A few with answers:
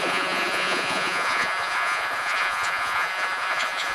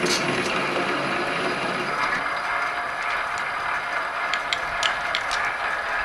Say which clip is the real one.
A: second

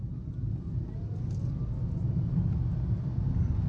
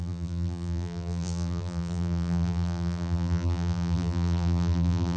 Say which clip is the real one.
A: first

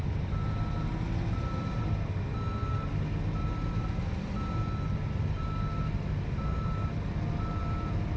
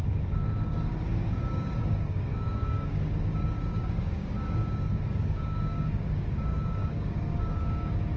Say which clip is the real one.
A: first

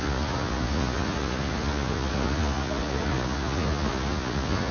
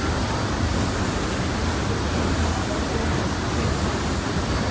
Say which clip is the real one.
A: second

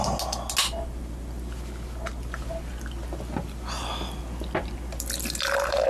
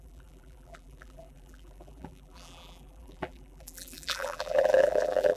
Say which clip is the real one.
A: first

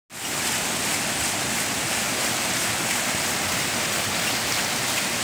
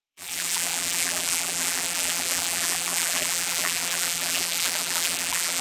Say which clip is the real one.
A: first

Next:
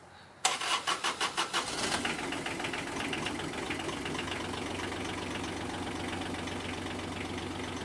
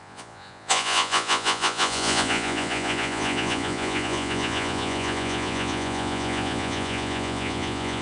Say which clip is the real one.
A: first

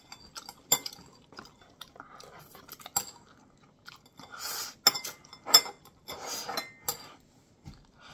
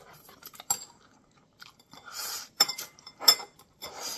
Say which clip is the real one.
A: first